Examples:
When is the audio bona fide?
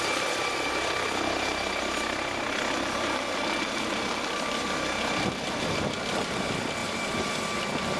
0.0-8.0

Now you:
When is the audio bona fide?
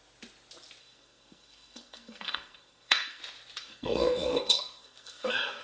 0.0-0.8; 3.2-3.6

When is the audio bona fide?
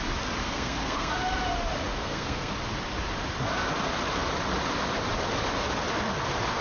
0.0-0.4; 1.1-1.9; 2.5-6.6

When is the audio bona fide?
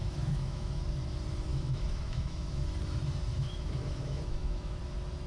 0.7-1.5; 2.6-3.3; 4.8-5.3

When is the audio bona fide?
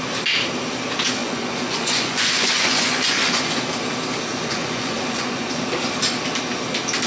0.0-1.2; 3.5-4.3; 5.6-7.1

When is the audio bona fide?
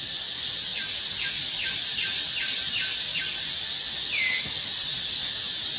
0.0-5.8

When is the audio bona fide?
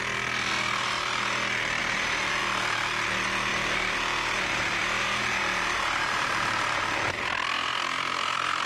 0.0-1.8; 2.4-3.5; 6.8-8.7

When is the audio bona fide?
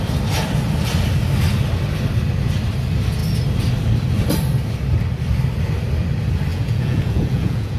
0.0-6.5